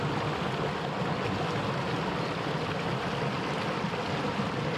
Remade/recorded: recorded